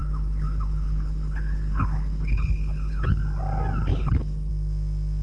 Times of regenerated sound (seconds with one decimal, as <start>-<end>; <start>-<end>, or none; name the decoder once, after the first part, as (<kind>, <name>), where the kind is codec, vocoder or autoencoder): 0.0-3.1 (codec, HILCodec); 3.9-4.5